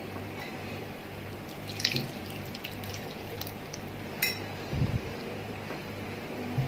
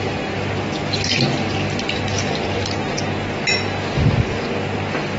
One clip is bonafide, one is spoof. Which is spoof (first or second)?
first